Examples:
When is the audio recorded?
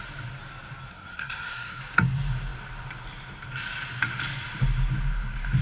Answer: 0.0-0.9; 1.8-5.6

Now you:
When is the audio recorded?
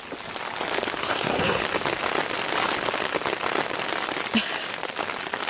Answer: 0.0-1.0; 1.6-5.5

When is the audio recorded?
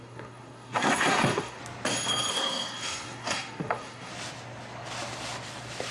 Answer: 1.6-2.3; 4.1-5.9